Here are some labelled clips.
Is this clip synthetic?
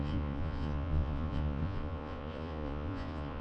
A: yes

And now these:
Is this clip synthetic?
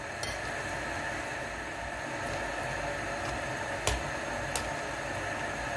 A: no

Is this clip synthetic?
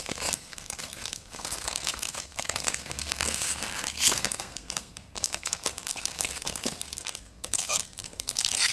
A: yes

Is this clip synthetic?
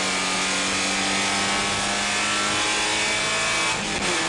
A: no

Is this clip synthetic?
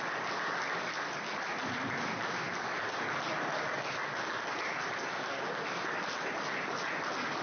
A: no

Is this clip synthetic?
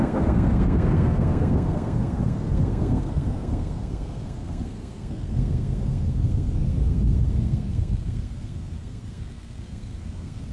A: yes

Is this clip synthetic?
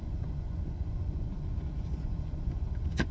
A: yes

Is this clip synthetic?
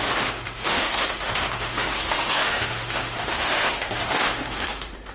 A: yes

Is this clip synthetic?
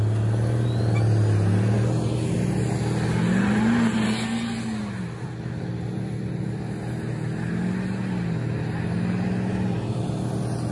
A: no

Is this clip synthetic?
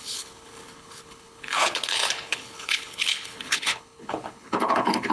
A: yes